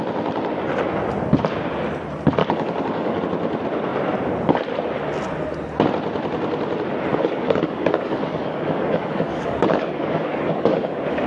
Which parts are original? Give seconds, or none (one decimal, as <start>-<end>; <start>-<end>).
0.0-2.4; 3.2-7.1